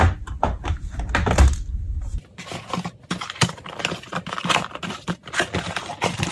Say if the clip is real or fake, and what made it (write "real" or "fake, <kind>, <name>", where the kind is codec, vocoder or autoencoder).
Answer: real